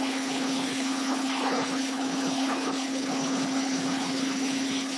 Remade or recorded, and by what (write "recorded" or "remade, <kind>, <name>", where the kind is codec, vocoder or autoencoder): remade, codec, HILCodec